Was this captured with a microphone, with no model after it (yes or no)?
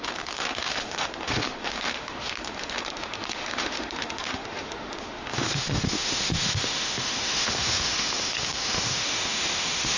no